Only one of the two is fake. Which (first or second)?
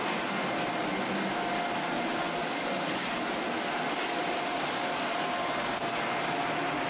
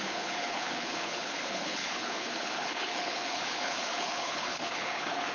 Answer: second